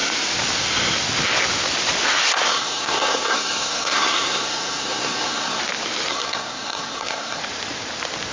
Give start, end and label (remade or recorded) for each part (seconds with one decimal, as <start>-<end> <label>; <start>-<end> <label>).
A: 0.0-2.5 recorded; 2.5-5.6 remade; 5.6-6.1 recorded; 6.1-7.4 remade; 7.4-8.3 recorded